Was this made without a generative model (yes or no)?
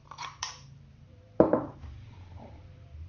no